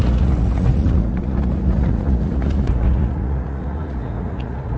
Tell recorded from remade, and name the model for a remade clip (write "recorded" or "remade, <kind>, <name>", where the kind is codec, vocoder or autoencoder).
remade, vocoder, Vocos